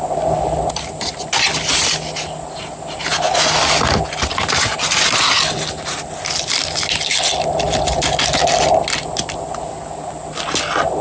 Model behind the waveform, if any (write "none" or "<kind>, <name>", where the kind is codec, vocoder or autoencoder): none